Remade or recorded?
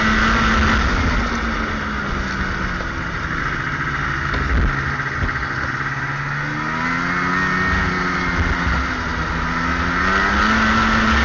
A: recorded